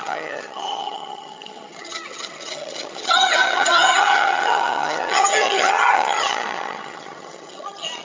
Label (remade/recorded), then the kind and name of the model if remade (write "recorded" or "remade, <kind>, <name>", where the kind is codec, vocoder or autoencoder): remade, vocoder, HiFi-GAN